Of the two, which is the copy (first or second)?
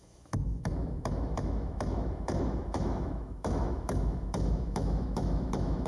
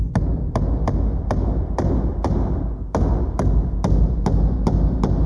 first